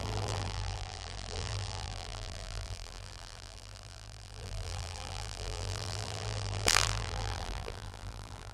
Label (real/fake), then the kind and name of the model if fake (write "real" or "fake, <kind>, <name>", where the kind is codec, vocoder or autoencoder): fake, vocoder, BigVGAN v2